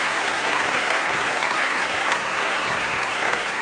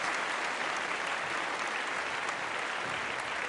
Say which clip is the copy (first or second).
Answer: first